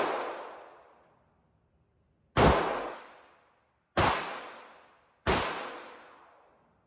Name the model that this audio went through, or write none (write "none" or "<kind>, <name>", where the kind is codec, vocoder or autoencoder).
none